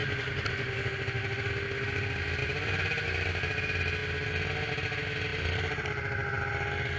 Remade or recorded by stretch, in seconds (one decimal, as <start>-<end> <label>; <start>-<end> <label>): 0.0-2.4 recorded; 2.4-3.5 remade; 3.5-5.3 recorded; 5.3-5.9 remade; 5.9-7.0 recorded